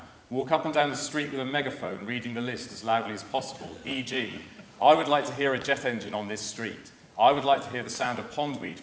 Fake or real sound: fake